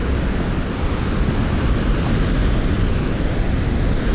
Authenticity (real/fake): real